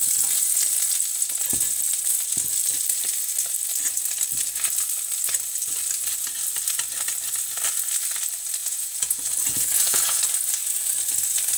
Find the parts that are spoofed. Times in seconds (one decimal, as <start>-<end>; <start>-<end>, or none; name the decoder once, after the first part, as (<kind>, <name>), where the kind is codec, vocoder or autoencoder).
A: 8.6-10.2 (vocoder, Vocos)